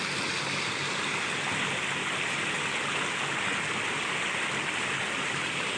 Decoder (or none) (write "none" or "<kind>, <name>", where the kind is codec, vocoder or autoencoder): none